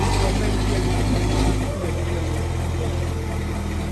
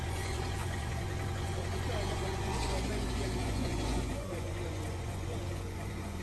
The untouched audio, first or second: first